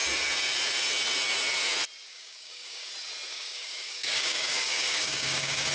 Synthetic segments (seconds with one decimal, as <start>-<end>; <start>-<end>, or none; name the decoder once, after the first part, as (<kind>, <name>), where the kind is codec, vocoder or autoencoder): 2.1-2.9 (codec, DAC); 3.3-5.7